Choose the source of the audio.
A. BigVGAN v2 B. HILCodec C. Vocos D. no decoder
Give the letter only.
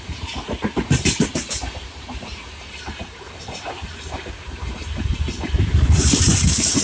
A